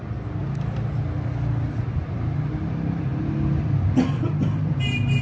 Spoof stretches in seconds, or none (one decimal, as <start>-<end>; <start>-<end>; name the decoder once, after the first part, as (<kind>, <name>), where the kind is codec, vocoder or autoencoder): none